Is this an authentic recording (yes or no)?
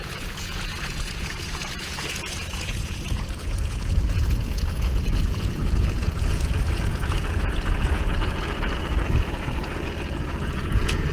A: no